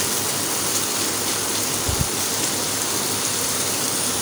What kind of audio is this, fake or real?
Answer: real